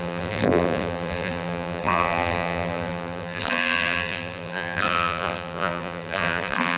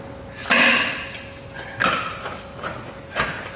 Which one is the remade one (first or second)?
first